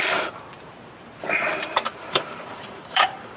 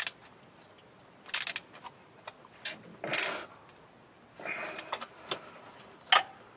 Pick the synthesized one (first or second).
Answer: first